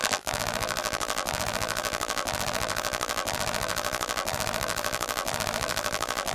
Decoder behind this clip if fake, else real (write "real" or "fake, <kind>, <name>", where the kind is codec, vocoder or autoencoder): fake, vocoder, BigVGAN v2